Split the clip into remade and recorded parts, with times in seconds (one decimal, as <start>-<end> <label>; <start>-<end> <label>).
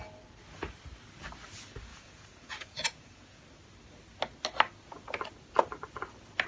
0.0-1.9 recorded; 1.9-3.4 remade; 3.4-6.5 recorded